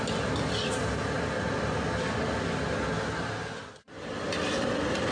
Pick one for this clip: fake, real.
real